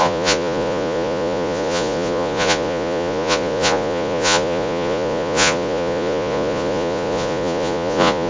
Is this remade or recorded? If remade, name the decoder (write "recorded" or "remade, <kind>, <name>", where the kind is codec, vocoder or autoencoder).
remade, vocoder, Vocos